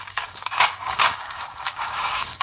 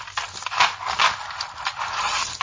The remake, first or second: first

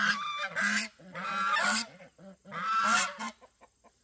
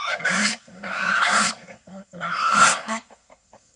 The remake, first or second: second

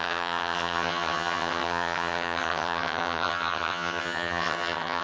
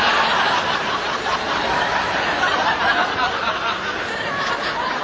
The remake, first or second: first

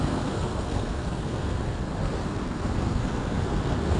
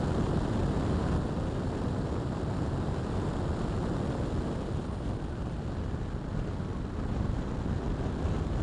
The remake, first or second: first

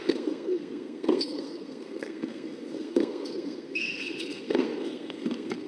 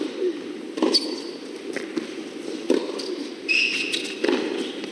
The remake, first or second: first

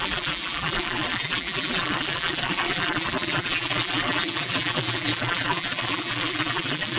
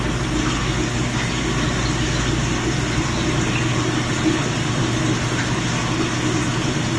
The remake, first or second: first